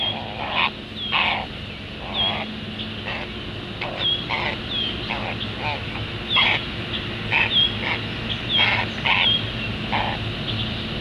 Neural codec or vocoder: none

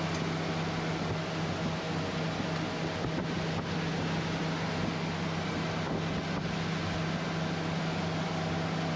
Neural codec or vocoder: none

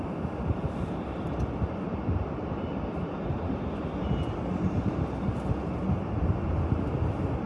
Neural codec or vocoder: none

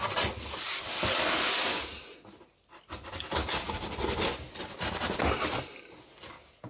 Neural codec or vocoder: none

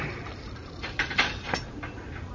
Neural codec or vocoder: none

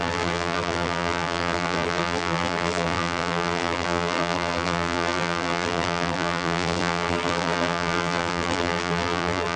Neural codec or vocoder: vocoder, BigVGAN v2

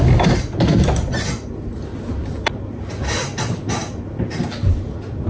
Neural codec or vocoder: none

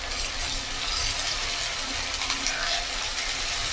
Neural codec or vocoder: none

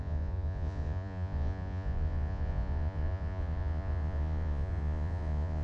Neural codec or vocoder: vocoder, Vocos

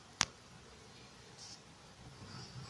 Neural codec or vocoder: none